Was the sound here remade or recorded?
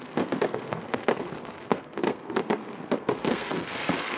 remade